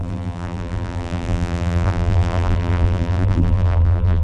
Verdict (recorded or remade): remade